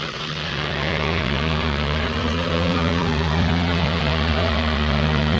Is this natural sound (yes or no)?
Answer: no